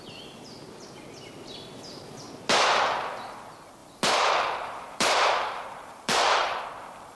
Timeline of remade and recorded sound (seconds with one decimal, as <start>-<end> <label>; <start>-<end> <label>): 0.0-3.8 recorded; 3.8-6.6 remade; 6.6-7.1 recorded